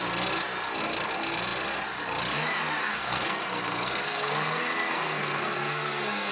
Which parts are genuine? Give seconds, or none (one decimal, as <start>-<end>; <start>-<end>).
0.0-2.8